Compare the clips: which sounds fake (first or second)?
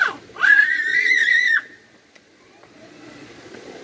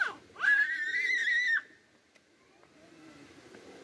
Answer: first